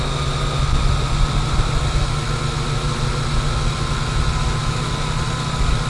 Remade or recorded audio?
recorded